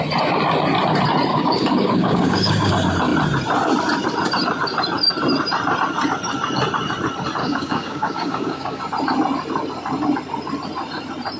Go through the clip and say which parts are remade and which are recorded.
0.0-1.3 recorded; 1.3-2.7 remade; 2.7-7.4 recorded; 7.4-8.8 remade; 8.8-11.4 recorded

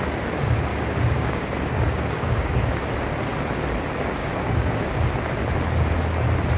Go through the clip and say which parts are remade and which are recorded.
0.0-0.7 recorded; 0.7-2.8 remade; 2.8-4.2 recorded; 4.2-4.9 remade; 4.9-6.6 recorded